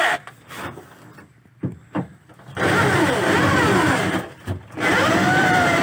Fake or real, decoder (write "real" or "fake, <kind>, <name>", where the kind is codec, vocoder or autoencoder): fake, vocoder, BigVGAN v2